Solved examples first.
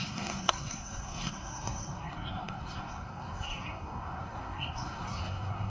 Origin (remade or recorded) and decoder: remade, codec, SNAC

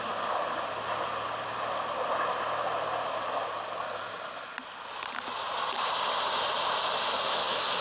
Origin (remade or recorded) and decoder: recorded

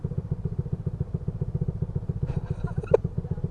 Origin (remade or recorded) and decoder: recorded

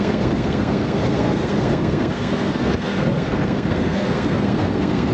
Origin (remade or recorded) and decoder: remade, codec, SNAC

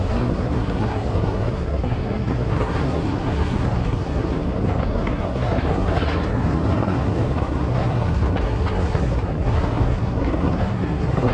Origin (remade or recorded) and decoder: remade, codec, SNAC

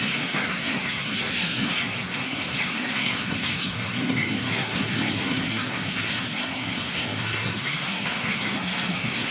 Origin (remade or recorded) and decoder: remade, codec, SNAC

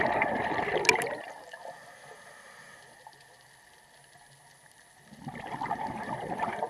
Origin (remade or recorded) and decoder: recorded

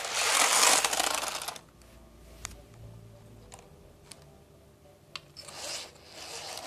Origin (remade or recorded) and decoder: recorded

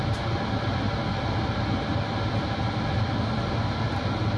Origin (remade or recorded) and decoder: recorded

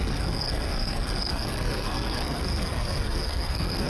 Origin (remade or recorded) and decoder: remade, codec, SNAC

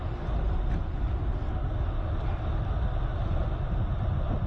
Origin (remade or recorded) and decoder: recorded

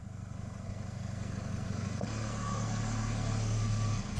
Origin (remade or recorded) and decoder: remade, codec, SNAC